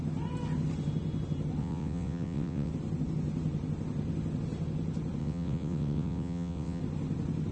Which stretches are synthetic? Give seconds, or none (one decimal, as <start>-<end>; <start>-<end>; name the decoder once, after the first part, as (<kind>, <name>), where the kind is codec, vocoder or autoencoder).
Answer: 1.6-2.7 (vocoder, WaveNeXt); 5.2-6.8